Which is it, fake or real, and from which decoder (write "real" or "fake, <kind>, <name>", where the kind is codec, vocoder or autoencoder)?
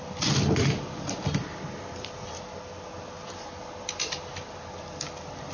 real